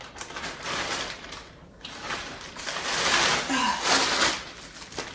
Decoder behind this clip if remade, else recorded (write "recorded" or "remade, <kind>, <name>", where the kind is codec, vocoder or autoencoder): recorded